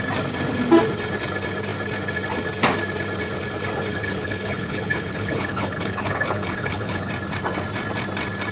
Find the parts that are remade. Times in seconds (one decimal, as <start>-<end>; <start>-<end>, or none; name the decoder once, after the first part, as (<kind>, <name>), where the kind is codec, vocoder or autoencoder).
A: 3.9-7.1 (codec, HILCodec)

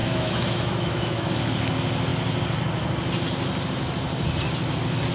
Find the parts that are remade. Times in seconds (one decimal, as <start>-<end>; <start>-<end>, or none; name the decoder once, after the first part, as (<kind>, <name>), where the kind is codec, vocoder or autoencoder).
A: 0.0-1.3 (autoencoder, DAC-VAE)